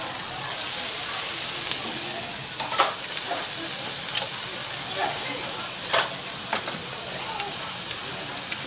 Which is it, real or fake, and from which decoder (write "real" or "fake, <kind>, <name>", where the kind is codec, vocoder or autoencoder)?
real